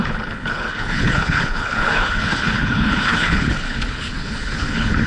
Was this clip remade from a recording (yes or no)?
yes